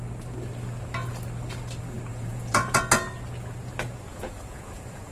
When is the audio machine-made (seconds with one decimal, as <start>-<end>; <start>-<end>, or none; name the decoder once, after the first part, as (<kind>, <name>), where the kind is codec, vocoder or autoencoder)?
2.1-2.8 (vocoder, Vocos); 4.1-5.1